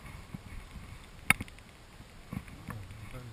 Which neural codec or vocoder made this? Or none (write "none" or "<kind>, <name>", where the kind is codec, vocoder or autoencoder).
none